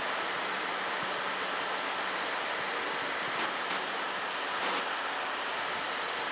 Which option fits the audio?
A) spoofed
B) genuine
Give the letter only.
B